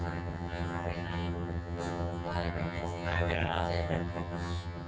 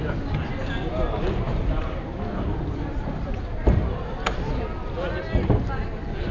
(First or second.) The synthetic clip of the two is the first